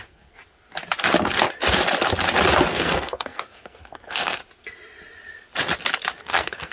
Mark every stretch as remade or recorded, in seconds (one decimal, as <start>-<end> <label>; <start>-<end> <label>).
0.0-0.4 remade; 0.4-2.7 recorded; 2.7-4.4 remade; 4.4-6.2 recorded; 6.2-6.7 remade